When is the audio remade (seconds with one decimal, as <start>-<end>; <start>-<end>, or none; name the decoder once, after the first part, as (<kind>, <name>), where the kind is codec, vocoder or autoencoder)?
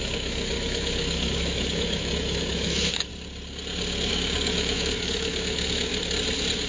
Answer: 0.0-3.1 (autoencoder, DAC-VAE); 4.1-5.9